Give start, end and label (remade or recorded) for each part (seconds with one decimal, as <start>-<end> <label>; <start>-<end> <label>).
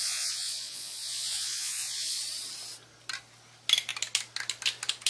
0.0-2.2 remade; 2.2-5.1 recorded